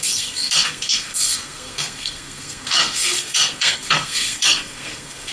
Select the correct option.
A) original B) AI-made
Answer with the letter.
B